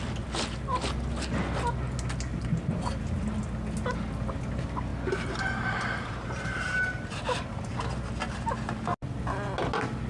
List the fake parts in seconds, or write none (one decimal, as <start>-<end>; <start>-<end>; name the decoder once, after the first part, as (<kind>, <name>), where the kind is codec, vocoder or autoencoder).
2.3-3.0 (vocoder, BigVGAN v2); 4.9-7.8